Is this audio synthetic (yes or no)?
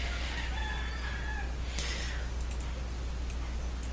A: no